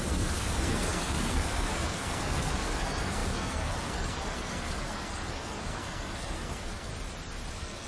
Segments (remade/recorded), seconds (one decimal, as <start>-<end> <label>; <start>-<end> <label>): 0.0-6.9 remade; 6.9-7.5 recorded; 7.5-7.9 remade